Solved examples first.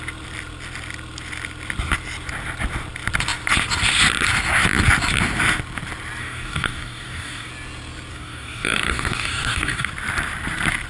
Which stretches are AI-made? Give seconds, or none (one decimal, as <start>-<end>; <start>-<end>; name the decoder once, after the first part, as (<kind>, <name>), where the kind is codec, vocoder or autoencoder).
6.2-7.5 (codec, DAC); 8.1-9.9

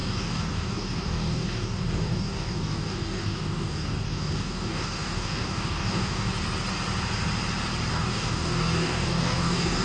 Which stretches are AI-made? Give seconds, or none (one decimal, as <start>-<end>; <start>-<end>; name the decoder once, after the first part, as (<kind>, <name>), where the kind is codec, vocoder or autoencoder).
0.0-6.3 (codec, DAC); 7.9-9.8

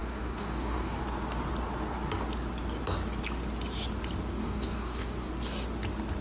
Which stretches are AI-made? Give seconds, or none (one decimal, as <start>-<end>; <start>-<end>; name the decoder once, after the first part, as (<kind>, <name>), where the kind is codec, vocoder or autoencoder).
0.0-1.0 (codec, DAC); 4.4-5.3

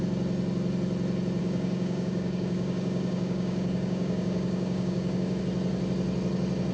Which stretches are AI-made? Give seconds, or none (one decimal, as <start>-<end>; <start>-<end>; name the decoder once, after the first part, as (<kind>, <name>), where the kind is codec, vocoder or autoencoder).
1.4-5.4 (codec, DAC)

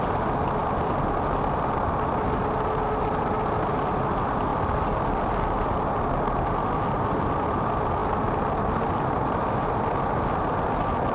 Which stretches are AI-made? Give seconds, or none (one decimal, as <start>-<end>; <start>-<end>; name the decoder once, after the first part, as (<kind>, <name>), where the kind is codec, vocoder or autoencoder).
none

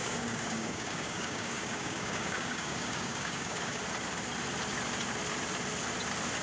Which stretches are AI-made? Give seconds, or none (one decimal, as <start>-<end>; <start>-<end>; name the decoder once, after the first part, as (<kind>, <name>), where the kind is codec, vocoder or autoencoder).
0.0-3.8 (codec, DAC)

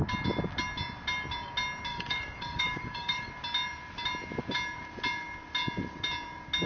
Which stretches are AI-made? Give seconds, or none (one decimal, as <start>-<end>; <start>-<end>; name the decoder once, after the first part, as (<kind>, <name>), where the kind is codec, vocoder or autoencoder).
1.9-3.3 (codec, DAC)